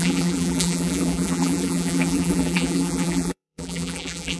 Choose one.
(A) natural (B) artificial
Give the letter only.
B